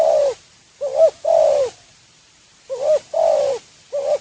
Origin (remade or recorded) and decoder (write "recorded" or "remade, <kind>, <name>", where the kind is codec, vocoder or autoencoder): recorded